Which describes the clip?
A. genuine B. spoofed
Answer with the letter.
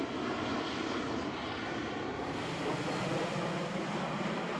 A